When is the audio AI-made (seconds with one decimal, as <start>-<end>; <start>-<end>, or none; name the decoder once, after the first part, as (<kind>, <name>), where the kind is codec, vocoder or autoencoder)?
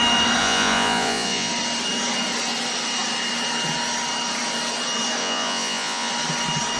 0.4-1.5 (vocoder, Vocos); 5.2-6.1